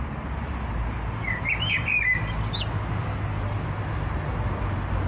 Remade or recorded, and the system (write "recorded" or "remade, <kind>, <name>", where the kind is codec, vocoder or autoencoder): recorded